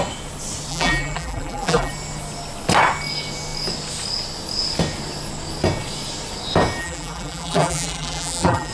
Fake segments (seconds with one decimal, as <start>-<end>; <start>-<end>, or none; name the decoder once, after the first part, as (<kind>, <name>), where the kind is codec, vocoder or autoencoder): 0.7-1.9 (vocoder, BigVGAN v2); 6.8-8.7

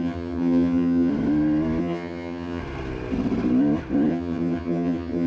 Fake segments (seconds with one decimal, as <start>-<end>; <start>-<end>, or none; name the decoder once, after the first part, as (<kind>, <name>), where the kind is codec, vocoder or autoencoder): 0.0-1.1 (vocoder, HiFi-GAN); 1.8-2.6; 4.1-5.3